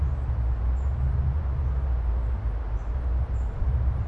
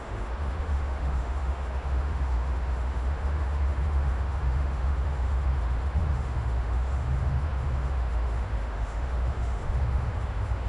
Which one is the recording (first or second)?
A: first